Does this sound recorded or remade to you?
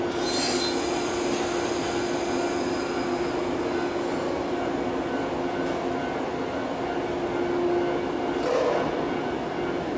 recorded